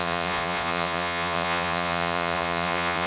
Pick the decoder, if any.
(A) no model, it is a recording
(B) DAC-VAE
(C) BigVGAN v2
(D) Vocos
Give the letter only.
D